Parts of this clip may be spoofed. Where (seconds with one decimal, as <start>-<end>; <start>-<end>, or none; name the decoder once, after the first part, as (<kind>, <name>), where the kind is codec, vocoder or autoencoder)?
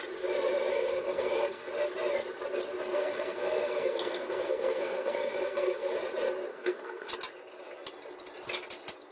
0.7-1.7 (codec, SNAC); 2.9-5.9; 6.5-7.1